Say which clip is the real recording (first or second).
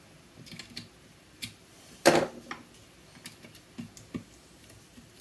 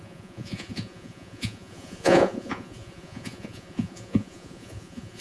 first